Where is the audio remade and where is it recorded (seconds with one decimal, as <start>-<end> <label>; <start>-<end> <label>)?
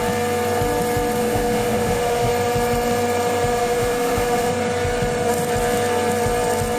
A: 0.0-1.2 recorded; 1.2-2.3 remade; 2.3-3.6 recorded; 3.6-4.5 remade; 4.5-6.8 recorded